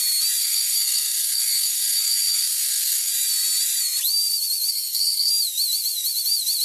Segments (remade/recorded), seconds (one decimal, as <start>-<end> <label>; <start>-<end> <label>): 0.0-0.4 recorded; 0.4-3.1 remade; 3.1-4.7 recorded; 4.7-5.3 remade; 5.3-6.6 recorded